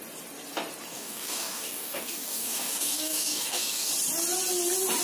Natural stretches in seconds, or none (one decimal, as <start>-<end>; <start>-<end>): 0.0-0.9; 3.9-5.0